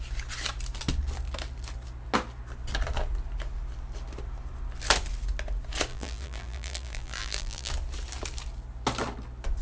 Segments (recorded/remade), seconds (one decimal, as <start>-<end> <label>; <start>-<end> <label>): 0.0-5.9 recorded; 5.9-7.7 remade; 7.7-9.6 recorded